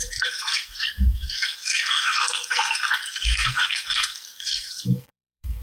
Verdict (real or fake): fake